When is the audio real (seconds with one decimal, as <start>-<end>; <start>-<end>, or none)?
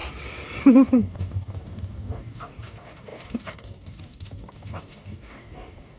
0.0-0.6